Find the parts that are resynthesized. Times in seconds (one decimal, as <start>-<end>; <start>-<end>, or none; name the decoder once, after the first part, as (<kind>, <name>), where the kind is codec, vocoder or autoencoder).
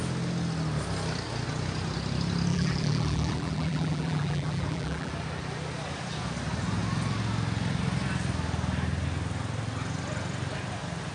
2.5-5.1 (vocoder, BigVGAN v2)